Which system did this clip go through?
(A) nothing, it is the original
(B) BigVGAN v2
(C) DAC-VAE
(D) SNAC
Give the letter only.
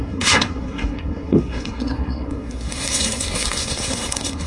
D